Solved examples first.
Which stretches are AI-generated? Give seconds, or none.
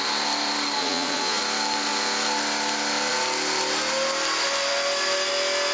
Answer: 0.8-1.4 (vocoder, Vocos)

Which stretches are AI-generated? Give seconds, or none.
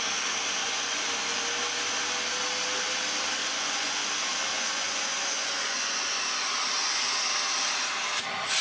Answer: 0.6-1.4 (vocoder, Vocos); 3.4-4.1; 4.5-6.5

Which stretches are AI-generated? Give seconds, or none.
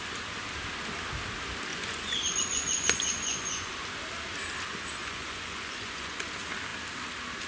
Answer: 1.7-3.7 (vocoder, Vocos); 5.0-6.3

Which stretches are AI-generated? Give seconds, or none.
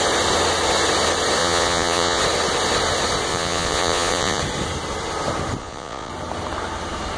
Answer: 1.4-2.2 (vocoder, Vocos); 3.3-4.4; 5.6-6.1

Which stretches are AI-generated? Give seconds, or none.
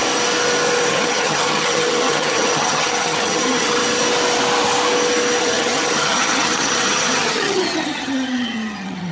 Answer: 0.9-3.8 (vocoder, HiFi-GAN); 5.4-9.1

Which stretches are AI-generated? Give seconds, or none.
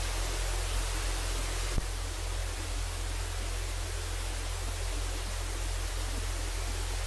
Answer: none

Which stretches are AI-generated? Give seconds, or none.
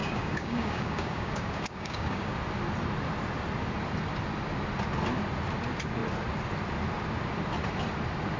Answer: 0.0-2.4 (codec, DAC)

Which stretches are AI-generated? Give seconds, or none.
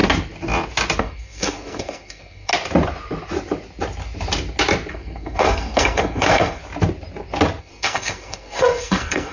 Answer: 1.0-2.5 (codec, SNAC); 4.9-6.6; 7.6-9.3